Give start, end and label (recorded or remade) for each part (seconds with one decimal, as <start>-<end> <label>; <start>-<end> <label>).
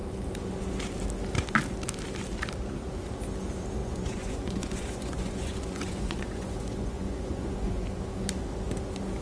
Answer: 0.0-3.8 recorded; 3.8-8.0 remade; 8.0-9.2 recorded